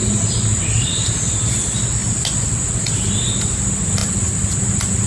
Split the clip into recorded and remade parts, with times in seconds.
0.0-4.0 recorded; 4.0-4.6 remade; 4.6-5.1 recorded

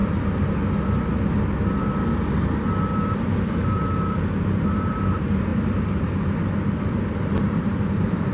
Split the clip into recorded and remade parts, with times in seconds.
0.0-3.1 recorded; 3.1-5.5 remade; 5.5-7.1 recorded; 7.1-8.3 remade

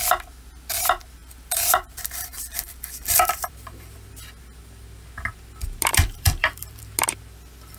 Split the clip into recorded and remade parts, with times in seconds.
0.0-1.2 recorded; 1.2-4.1 remade; 4.1-5.9 recorded; 5.9-6.8 remade; 6.8-7.8 recorded

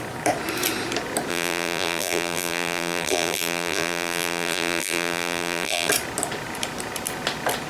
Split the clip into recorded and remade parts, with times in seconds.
0.0-1.3 recorded; 1.3-5.9 remade; 5.9-7.7 recorded

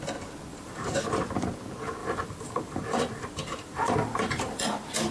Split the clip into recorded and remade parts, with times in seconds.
0.0-0.5 recorded; 0.5-1.0 remade; 1.0-2.0 recorded; 2.0-5.1 remade

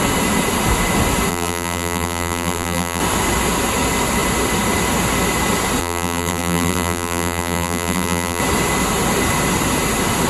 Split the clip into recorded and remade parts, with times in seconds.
0.0-1.3 recorded; 1.3-3.0 remade; 3.0-5.8 recorded; 5.8-8.4 remade; 8.4-10.3 recorded

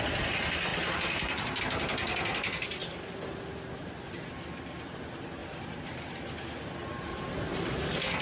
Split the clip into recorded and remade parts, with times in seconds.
0.0-0.7 recorded; 0.7-1.6 remade; 1.6-5.4 recorded; 5.4-7.2 remade; 7.2-8.2 recorded